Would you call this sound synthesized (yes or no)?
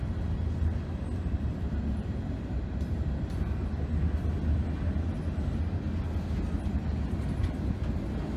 no